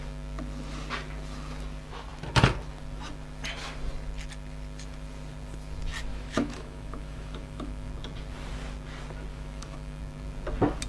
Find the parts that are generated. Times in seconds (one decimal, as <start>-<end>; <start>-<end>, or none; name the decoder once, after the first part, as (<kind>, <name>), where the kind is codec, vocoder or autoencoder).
6.1-7.9 (autoencoder, DAC-VAE); 9.3-10.0